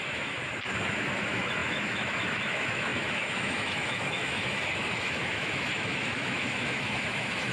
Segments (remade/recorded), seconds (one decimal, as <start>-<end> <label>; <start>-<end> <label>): 0.0-0.4 remade; 0.4-0.9 recorded; 0.9-7.5 remade